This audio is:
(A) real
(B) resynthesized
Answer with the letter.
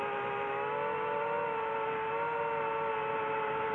A